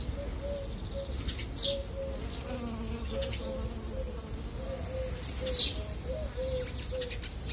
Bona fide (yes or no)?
yes